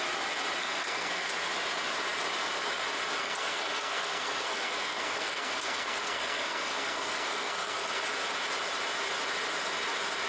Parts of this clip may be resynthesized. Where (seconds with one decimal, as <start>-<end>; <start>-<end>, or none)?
0.6-1.3; 3.2-8.0